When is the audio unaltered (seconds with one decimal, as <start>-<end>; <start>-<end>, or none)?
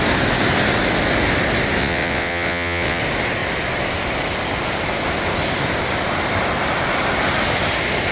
0.0-1.8; 3.0-8.1